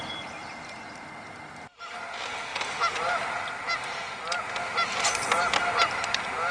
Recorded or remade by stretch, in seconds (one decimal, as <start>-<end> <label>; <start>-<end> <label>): 0.0-6.5 recorded

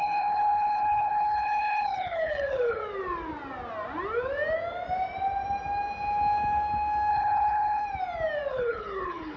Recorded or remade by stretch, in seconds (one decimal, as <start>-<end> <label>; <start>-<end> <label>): 0.0-2.8 remade; 2.8-7.1 recorded; 7.1-7.8 remade; 7.8-8.5 recorded; 8.5-9.4 remade

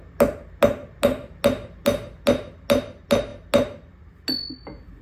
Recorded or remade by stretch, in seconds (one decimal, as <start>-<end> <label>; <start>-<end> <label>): 0.0-5.0 recorded

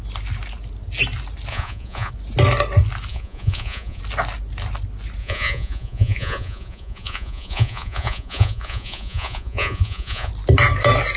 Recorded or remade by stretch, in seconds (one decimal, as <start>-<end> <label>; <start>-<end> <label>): 0.0-1.5 recorded; 1.5-2.1 remade; 2.1-3.1 recorded; 3.1-4.0 remade; 4.0-5.2 recorded; 5.2-10.3 remade; 10.3-11.2 recorded